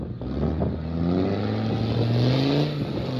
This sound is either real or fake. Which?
real